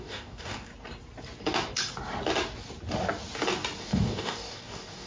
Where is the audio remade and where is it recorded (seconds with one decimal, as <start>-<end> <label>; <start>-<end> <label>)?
0.0-0.7 remade; 0.7-3.8 recorded; 3.8-5.1 remade